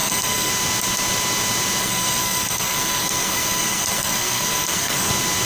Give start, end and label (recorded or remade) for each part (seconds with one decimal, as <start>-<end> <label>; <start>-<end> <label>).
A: 0.0-0.5 remade; 0.5-1.8 recorded; 1.8-5.1 remade; 5.1-5.5 recorded